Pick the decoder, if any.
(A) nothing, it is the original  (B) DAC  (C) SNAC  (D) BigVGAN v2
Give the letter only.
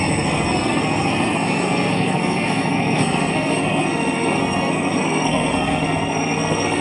C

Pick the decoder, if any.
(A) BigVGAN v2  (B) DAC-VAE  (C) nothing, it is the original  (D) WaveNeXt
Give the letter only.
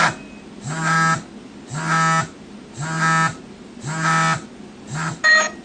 C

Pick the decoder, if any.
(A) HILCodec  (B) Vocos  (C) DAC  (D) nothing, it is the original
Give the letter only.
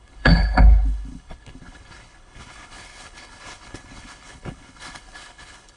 A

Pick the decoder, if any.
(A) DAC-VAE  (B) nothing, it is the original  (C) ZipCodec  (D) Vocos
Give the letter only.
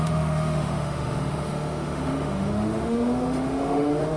A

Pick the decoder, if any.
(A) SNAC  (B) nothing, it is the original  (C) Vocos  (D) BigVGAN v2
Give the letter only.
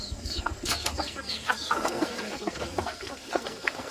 A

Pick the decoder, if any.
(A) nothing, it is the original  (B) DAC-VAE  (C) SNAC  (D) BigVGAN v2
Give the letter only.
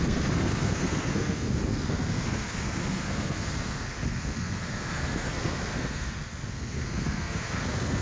C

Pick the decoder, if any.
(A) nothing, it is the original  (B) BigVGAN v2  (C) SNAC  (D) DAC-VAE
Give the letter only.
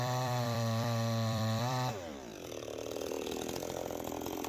B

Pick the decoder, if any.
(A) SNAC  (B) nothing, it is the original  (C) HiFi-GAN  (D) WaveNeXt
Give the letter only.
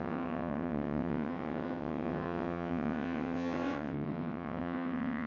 D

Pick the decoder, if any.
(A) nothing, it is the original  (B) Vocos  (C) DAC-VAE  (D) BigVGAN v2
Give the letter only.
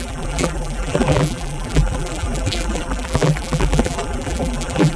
D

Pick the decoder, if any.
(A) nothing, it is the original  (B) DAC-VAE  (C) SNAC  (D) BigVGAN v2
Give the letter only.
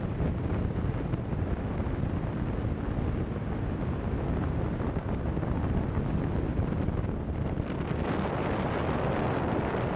A